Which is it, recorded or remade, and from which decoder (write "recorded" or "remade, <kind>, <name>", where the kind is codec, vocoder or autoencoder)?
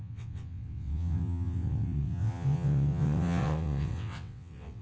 remade, vocoder, WaveNeXt